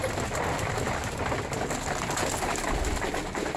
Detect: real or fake real